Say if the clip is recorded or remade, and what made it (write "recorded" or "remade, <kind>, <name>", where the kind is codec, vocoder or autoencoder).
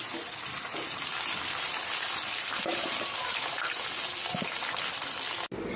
recorded